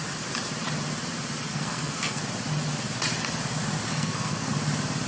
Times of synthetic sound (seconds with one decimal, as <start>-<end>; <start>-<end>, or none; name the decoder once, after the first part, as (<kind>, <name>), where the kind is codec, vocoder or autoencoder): 1.5-2.2 (codec, SNAC); 3.9-4.5